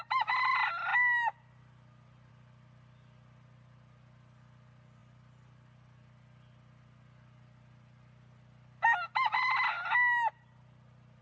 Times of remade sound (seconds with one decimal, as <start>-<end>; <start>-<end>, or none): none